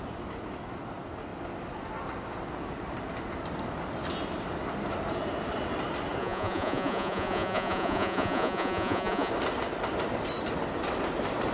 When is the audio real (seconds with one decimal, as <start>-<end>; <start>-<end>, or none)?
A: 0.0-6.2; 9.3-11.5